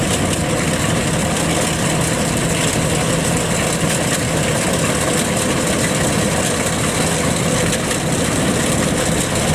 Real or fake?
real